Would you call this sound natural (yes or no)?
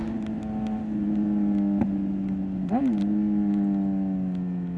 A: yes